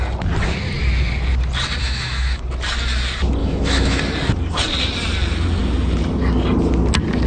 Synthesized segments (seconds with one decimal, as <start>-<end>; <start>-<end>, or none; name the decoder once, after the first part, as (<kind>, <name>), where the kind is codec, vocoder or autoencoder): 1.8-2.4 (autoencoder, DAC-VAE); 3.4-4.0